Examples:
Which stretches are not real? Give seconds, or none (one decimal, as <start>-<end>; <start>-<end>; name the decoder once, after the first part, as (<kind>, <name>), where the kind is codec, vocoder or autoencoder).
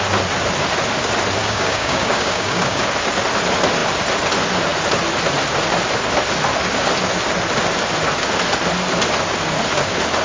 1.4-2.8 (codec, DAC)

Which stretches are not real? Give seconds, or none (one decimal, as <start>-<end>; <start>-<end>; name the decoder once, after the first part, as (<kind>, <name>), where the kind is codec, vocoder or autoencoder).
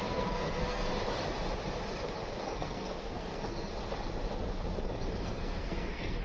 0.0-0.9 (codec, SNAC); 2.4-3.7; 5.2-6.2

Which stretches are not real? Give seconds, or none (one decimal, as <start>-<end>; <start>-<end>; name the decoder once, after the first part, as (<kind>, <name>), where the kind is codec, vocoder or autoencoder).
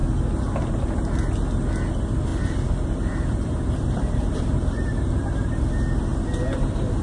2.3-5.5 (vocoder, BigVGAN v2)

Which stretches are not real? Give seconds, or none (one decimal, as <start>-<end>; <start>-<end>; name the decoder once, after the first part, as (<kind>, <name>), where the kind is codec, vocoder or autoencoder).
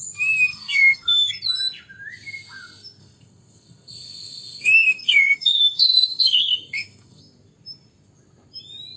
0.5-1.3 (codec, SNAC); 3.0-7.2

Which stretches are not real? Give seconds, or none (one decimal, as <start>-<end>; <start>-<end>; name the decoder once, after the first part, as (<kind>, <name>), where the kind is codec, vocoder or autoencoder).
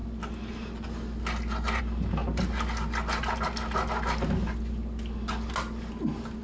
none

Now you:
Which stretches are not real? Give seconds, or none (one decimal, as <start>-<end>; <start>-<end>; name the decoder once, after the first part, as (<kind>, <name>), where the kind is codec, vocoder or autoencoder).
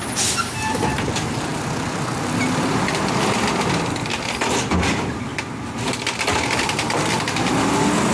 none